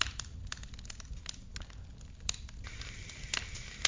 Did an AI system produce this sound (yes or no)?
no